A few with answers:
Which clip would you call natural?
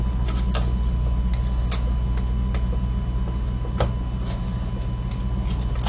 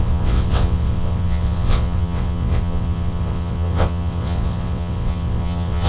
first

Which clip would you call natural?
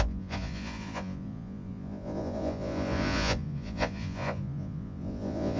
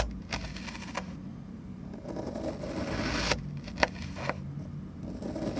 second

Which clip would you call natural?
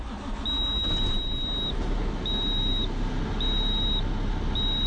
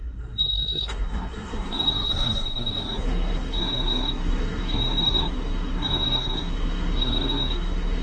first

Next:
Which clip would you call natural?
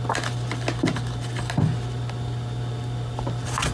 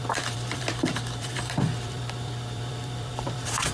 first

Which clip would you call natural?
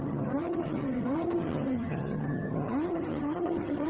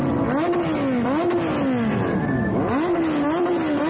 second